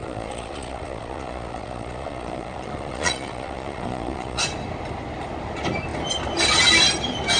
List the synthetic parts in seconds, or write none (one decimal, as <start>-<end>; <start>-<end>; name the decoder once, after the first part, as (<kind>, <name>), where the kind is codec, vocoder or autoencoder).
0.0-4.4 (vocoder, Vocos)